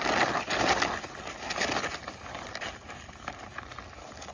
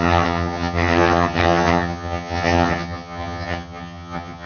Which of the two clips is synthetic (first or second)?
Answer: second